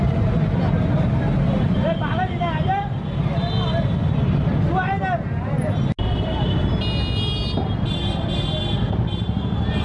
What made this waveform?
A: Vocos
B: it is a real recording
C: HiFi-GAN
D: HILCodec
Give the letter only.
B